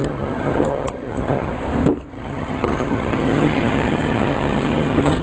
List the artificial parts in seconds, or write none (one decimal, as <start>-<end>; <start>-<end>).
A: 0.0-1.5; 2.1-5.2